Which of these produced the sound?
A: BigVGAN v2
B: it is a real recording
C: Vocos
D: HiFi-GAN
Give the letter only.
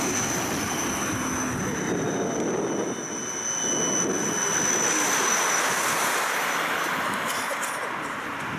B